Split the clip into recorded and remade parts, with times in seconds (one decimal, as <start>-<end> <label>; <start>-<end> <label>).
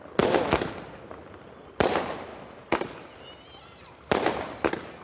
0.0-5.0 recorded